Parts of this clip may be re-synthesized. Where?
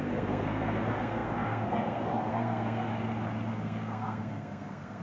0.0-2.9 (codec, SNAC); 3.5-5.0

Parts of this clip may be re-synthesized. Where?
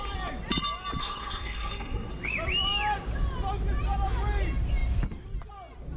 1.0-2.1 (codec, SNAC)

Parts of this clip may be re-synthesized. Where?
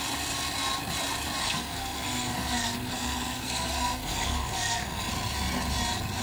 1.4-5.1 (codec, SNAC)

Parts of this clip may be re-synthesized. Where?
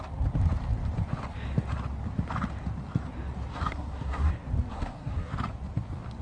3.5-4.3 (codec, SNAC); 4.7-5.3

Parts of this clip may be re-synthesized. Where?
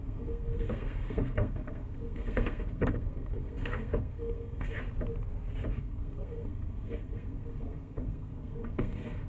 0.0-4.8 (codec, SNAC); 5.7-9.3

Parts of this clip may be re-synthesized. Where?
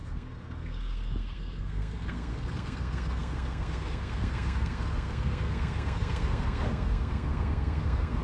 0.0-8.2 (codec, SNAC)